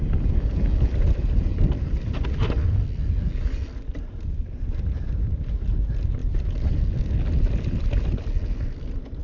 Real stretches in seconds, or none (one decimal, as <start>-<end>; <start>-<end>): 0.0-9.2